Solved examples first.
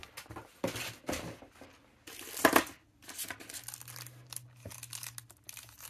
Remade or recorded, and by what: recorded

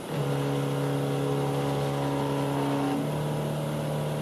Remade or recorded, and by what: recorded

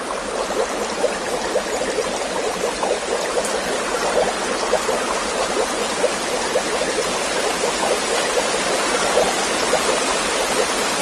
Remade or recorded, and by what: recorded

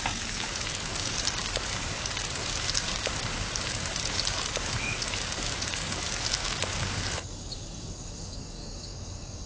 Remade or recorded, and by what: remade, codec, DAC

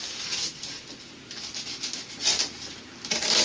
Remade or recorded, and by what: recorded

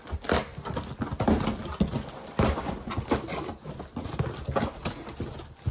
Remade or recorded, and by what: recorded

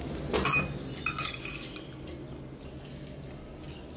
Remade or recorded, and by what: recorded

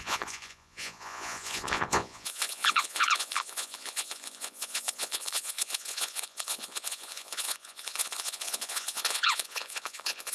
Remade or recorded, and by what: remade, vocoder, Vocos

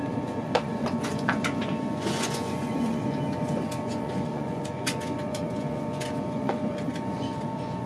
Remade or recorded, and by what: remade, vocoder, Vocos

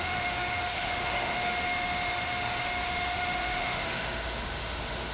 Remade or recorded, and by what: remade, autoencoder, DAC-VAE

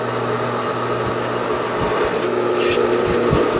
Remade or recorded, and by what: recorded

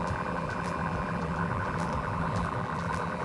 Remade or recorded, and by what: remade, vocoder, BigVGAN v2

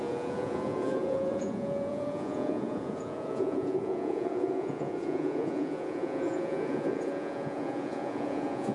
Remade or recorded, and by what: remade, vocoder, Vocos